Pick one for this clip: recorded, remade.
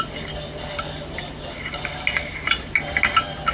recorded